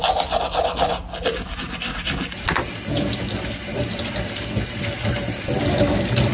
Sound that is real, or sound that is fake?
real